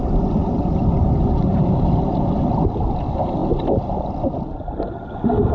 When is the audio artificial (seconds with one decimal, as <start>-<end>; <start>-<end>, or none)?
0.4-1.9